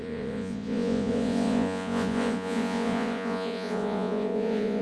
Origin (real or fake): fake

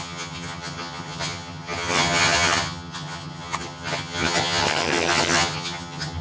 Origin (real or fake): fake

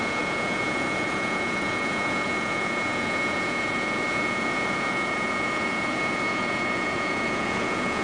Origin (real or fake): fake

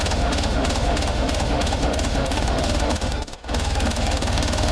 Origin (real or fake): fake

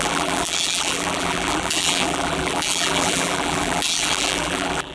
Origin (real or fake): fake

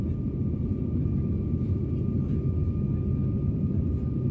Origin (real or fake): real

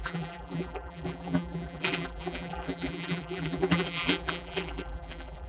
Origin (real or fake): fake